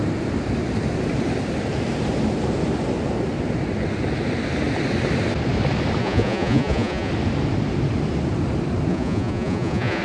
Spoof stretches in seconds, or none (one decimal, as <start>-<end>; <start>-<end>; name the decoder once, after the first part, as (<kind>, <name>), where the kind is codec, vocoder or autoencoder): 6.0-7.1 (vocoder, Vocos); 8.9-10.0